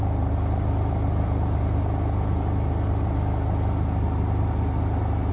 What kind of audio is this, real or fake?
real